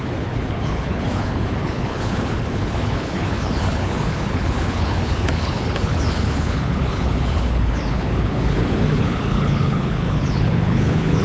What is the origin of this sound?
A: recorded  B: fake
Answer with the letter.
B